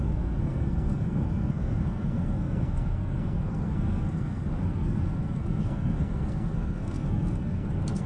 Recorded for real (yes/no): no